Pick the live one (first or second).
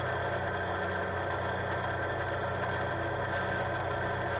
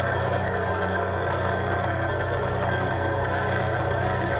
first